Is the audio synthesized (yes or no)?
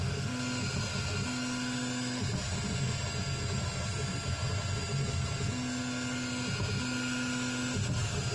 no